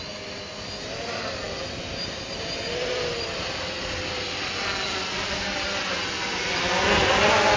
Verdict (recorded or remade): recorded